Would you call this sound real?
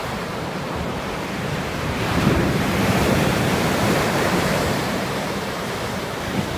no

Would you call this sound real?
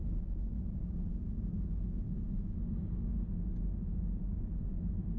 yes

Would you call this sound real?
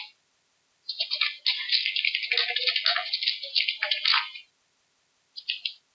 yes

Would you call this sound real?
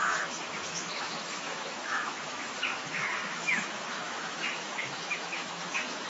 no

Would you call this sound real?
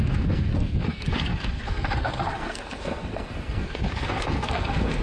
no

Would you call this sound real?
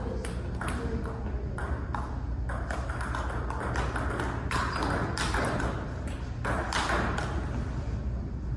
yes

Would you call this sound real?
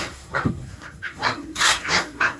no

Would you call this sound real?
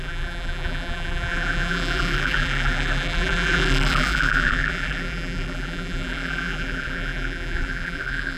no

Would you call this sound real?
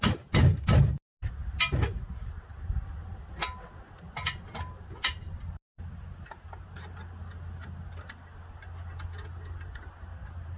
yes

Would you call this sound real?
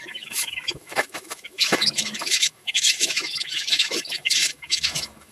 no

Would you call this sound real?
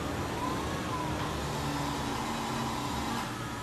yes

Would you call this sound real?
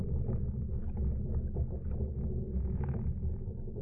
yes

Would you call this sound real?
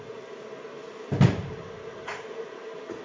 yes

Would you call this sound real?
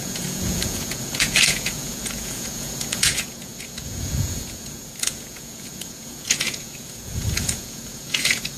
no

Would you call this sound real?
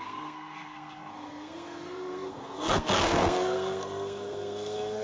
no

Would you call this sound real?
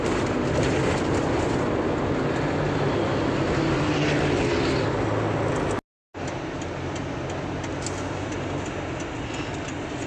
yes